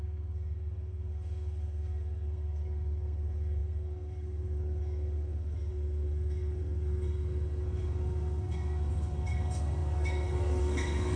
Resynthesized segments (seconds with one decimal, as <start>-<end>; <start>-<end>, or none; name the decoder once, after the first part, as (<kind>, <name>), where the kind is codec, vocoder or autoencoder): 0.0-11.2 (codec, SNAC)